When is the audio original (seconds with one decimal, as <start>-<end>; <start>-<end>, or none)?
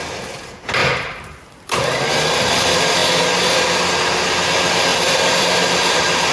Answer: 0.0-0.8; 2.5-4.9